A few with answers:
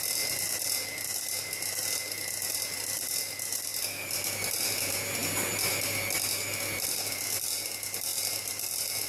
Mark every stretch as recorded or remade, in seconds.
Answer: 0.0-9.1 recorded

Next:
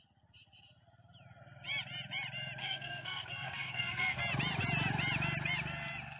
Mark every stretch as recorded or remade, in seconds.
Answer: 0.0-2.6 recorded; 2.6-4.2 remade; 4.2-6.2 recorded

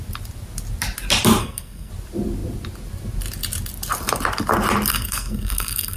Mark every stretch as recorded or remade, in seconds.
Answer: 0.0-1.4 recorded; 1.4-1.9 remade; 1.9-4.9 recorded; 4.9-6.0 remade

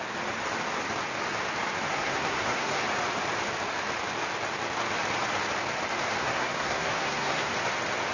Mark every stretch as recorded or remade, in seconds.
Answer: 0.0-1.9 recorded; 1.9-2.8 remade; 2.8-6.2 recorded; 6.2-7.5 remade; 7.5-8.1 recorded

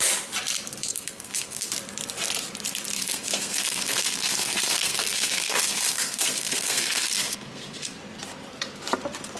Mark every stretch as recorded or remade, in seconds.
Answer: 0.0-0.9 recorded; 0.9-1.7 remade; 1.7-2.9 recorded; 2.9-8.0 remade; 8.0-9.4 recorded

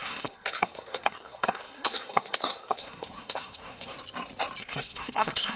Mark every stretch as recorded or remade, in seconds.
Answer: 0.0-3.9 remade; 3.9-4.6 recorded; 4.6-5.6 remade